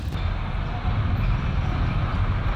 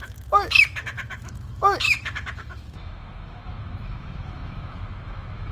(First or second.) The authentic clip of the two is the first